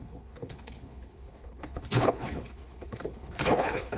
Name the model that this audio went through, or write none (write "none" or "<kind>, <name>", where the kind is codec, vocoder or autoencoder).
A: codec, HILCodec